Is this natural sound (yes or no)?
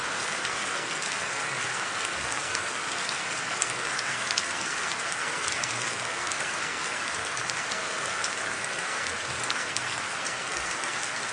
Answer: no